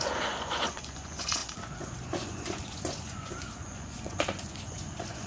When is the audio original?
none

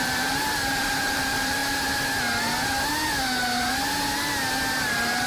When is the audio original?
1.6-4.8

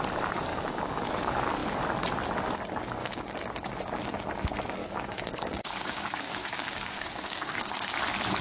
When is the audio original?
0.0-0.5; 1.0-3.0; 3.7-4.8; 8.0-8.4

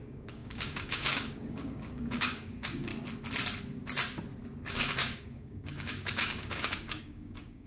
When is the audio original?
2.9-4.7